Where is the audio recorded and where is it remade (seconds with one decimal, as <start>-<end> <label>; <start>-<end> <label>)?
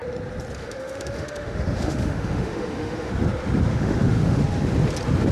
0.0-0.6 recorded; 0.6-3.1 remade; 3.1-3.7 recorded; 3.7-4.4 remade; 4.4-5.3 recorded